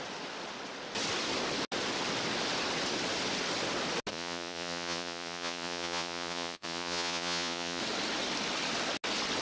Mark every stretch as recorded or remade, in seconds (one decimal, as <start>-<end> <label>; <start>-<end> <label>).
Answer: 0.0-4.1 recorded; 4.1-7.8 remade; 7.8-9.4 recorded